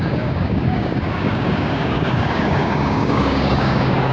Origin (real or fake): fake